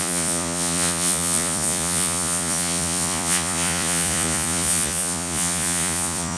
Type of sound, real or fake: fake